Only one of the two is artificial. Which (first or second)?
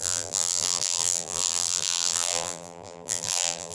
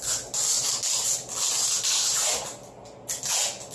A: first